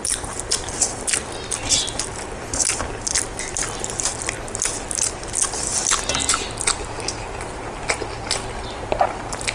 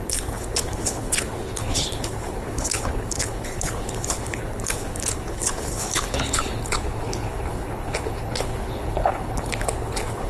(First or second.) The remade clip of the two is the second